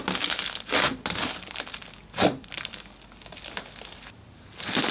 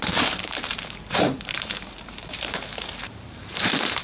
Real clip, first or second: first